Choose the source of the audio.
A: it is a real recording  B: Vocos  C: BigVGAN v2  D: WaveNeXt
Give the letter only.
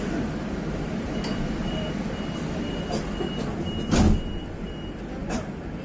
A